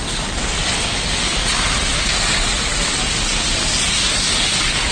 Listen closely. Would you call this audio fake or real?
real